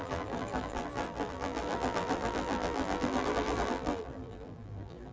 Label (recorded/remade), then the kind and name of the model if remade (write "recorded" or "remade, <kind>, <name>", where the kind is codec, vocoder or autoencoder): remade, vocoder, BigVGAN v2